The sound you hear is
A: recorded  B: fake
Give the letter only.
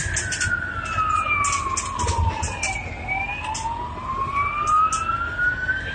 A